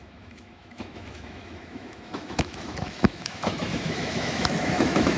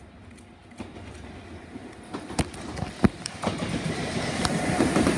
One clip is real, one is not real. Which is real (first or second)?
second